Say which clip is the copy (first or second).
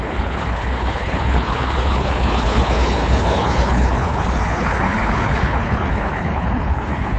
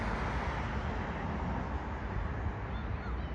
first